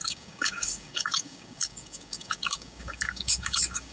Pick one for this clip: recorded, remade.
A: remade